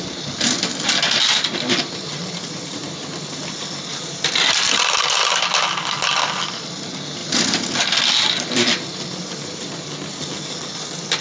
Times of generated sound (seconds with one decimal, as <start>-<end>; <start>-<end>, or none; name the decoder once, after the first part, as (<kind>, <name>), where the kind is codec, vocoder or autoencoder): 3.9-5.0 (vocoder, BigVGAN v2)